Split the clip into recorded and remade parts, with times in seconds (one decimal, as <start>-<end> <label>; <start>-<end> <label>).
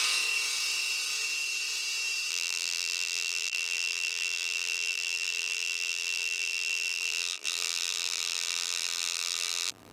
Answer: 0.0-2.3 recorded; 2.3-9.9 remade